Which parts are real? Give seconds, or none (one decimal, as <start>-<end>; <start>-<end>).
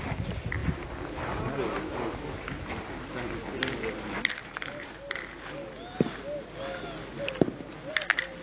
0.0-4.4; 5.0-7.1; 7.7-8.4